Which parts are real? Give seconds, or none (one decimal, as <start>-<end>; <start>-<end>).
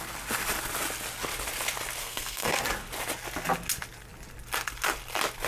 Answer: 0.0-2.0; 2.6-5.5